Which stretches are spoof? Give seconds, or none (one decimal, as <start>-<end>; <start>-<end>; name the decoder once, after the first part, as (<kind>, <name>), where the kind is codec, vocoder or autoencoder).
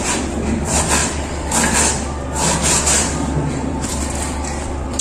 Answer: 0.0-5.0 (vocoder, BigVGAN v2)